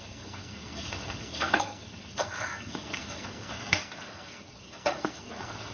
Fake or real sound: fake